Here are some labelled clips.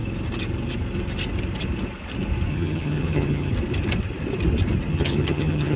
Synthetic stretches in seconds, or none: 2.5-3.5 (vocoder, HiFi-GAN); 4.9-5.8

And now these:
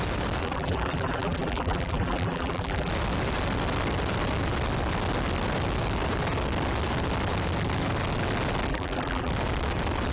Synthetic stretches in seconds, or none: 0.4-2.9 (vocoder, BigVGAN v2); 8.7-9.3

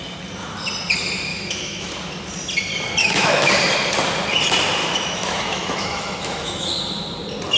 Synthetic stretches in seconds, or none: 1.3-1.9 (autoencoder, DAC-VAE); 3.0-3.5; 4.8-6.7

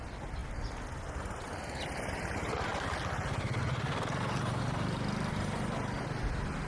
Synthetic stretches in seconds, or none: none

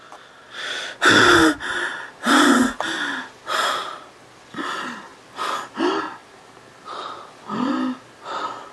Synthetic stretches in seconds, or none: none

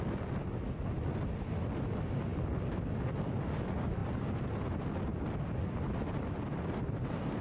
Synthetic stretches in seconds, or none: none

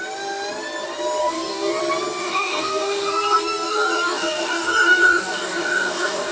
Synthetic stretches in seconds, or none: 1.2-1.8 (codec, DAC); 2.2-6.3